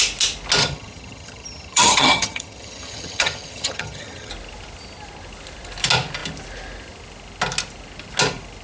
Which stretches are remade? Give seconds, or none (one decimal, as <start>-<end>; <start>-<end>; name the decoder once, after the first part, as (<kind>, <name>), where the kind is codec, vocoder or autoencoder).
0.6-4.3 (vocoder, HiFi-GAN)